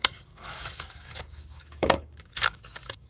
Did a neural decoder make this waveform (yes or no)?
yes